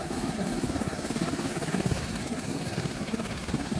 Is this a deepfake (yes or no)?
yes